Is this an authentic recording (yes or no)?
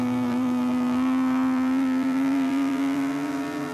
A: no